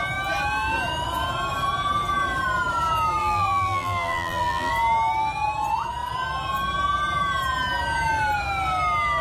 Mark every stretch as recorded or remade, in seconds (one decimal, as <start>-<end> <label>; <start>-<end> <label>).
0.0-3.2 recorded; 3.2-4.7 remade; 4.7-9.2 recorded